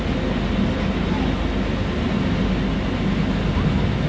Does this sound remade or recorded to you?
recorded